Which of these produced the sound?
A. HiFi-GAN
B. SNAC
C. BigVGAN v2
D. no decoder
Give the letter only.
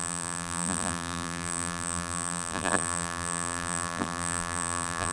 C